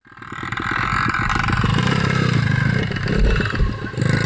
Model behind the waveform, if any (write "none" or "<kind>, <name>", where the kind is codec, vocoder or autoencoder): none